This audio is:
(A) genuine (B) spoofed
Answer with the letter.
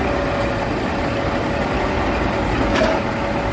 A